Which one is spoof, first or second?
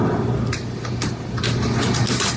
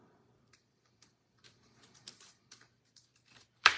second